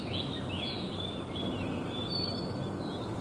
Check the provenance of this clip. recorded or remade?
recorded